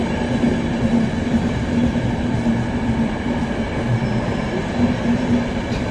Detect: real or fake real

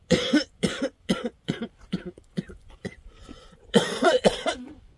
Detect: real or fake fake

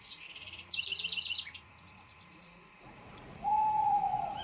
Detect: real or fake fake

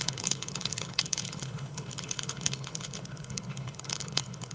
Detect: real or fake fake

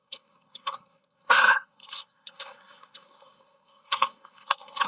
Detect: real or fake fake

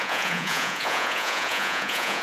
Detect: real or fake fake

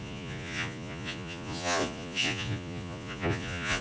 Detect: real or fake fake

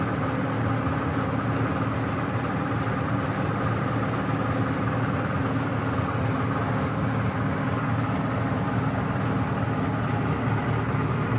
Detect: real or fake real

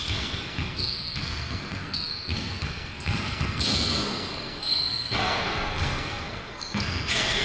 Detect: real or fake fake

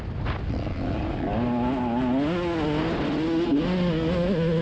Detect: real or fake real